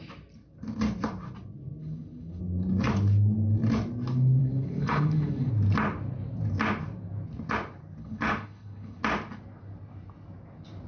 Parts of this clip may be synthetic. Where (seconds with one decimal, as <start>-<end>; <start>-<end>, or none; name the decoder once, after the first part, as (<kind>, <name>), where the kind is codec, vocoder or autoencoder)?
1.8-2.4 (codec, HILCodec); 4.4-5.5; 8.0-9.0